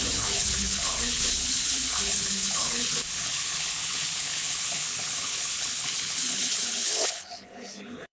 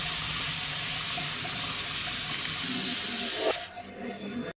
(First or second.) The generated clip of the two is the first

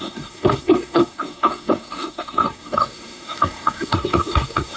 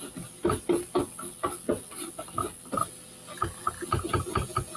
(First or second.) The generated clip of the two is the first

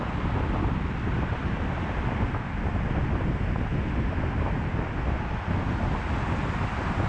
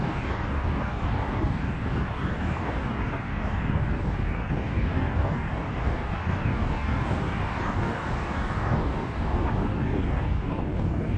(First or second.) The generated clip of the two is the second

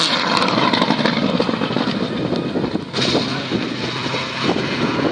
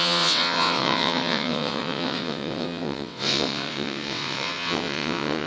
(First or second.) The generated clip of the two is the second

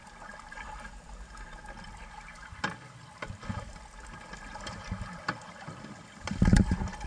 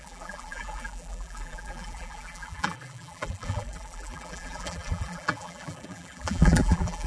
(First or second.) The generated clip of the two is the second